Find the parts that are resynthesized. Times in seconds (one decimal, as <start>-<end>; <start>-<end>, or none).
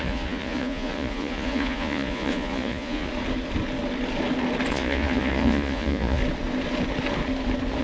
0.0-3.1; 4.7-6.2